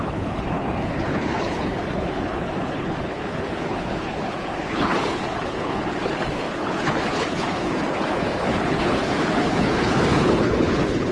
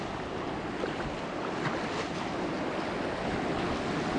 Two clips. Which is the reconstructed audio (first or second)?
first